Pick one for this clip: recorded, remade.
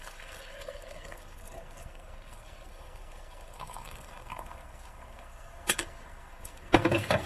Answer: remade